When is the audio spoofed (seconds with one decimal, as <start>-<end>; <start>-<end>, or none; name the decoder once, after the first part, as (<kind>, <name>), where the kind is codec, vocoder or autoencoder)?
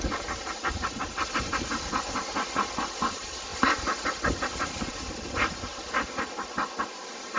none